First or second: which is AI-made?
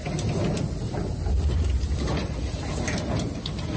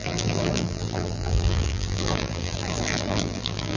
second